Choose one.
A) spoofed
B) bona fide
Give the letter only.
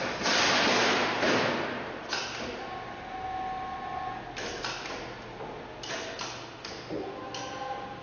B